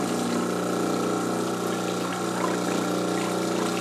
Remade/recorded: recorded